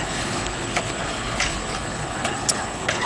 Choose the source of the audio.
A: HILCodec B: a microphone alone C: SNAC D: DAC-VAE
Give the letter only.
A